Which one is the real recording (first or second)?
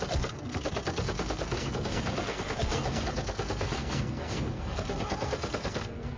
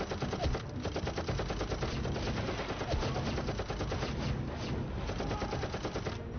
second